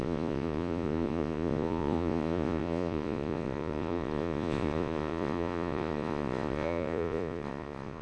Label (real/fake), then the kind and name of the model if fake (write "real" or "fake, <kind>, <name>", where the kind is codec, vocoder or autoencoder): fake, vocoder, Vocos